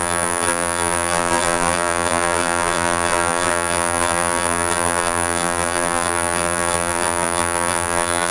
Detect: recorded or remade remade